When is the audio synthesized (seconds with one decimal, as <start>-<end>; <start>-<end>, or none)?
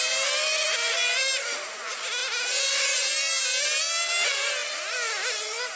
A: none